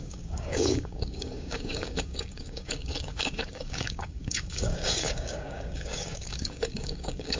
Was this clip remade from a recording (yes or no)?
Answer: yes